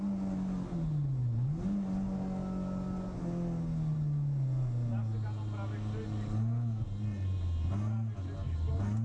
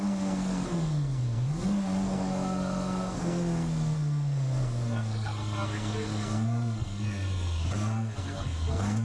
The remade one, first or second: second